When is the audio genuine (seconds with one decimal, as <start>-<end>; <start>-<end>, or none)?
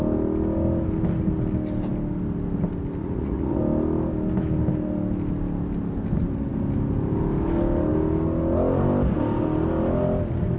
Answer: 0.0-3.0; 3.6-10.6